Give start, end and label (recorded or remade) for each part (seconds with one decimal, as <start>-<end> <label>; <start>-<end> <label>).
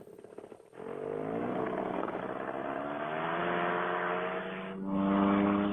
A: 0.0-1.4 recorded; 1.4-2.2 remade; 2.2-5.7 recorded